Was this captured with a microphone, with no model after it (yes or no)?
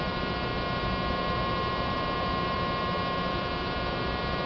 no